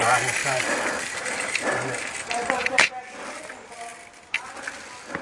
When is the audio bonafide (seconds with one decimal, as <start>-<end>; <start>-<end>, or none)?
0.0-0.4; 1.6-5.2